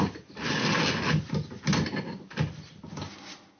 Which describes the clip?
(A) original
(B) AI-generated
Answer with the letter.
A